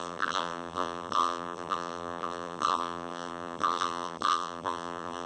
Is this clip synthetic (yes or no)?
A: yes